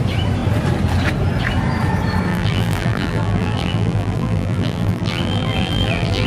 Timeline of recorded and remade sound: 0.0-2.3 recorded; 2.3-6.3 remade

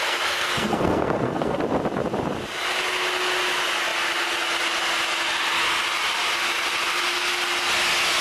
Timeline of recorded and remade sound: 0.0-1.6 remade; 1.6-8.2 recorded

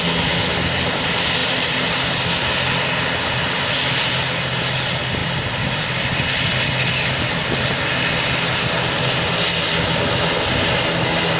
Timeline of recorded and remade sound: 0.0-11.4 recorded

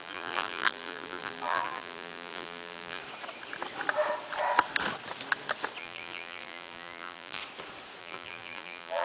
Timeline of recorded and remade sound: 0.0-3.0 remade; 3.0-5.8 recorded; 5.8-7.4 remade; 7.4-8.0 recorded; 8.0-9.0 remade

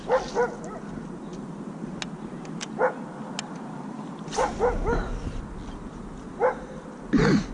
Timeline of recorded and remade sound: 0.0-7.5 recorded

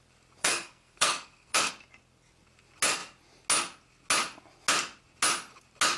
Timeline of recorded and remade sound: 0.0-0.4 recorded; 0.4-1.7 remade; 1.7-6.0 recorded

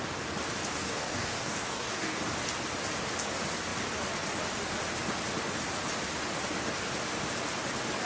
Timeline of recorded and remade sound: 0.0-0.8 recorded; 0.8-2.2 remade; 2.2-8.1 recorded

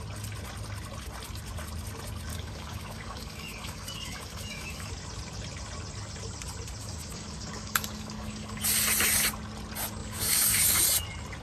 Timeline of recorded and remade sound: 0.0-2.3 recorded; 2.3-4.9 remade; 4.9-6.8 recorded; 6.8-8.6 remade; 8.6-10.0 recorded; 10.0-10.8 remade; 10.8-11.4 recorded